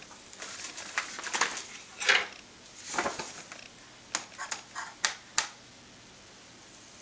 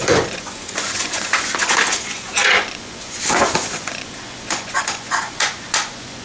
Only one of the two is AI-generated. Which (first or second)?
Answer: second